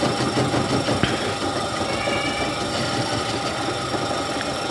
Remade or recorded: recorded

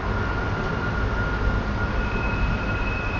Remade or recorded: recorded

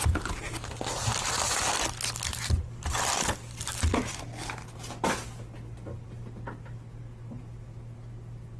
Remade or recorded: recorded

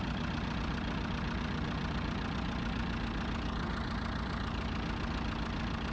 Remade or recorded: recorded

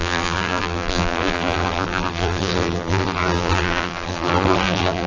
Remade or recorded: remade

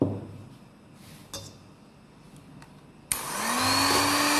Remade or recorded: recorded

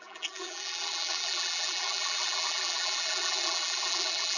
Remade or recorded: remade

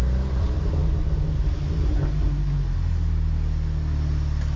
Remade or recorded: recorded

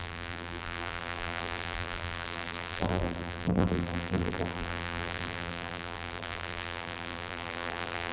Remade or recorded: remade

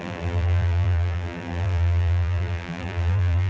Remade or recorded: remade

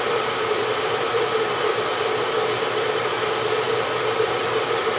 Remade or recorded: remade